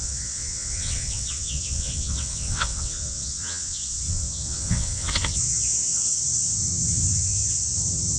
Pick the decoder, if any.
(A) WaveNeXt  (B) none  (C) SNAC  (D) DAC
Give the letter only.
A